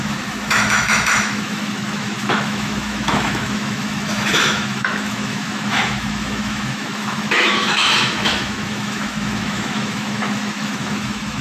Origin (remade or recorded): remade